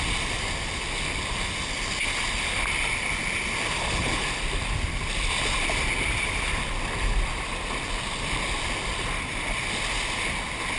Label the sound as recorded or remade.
recorded